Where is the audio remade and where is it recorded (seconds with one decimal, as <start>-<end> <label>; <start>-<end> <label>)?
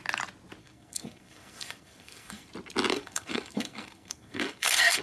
0.0-0.6 recorded; 0.6-2.5 remade; 2.5-2.9 recorded; 2.9-5.0 remade